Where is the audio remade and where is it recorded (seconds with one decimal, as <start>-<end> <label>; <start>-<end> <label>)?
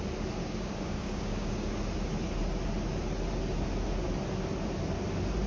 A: 0.0-0.4 recorded; 0.4-1.7 remade; 1.7-5.5 recorded